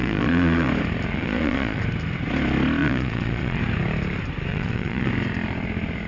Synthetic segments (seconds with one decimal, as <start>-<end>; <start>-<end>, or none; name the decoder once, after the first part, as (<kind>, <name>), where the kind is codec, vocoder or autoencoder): 0.0-0.7 (vocoder, Vocos); 1.1-1.8; 2.8-3.6; 4.5-5.1